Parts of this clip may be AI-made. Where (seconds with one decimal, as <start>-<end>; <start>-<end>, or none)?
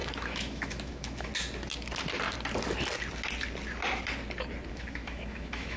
0.0-1.3; 4.7-5.8